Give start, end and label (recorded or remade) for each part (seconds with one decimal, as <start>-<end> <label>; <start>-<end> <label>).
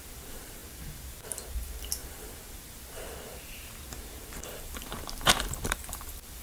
0.0-6.4 remade